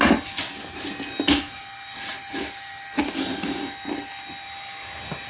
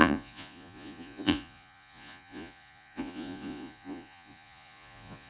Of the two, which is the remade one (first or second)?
second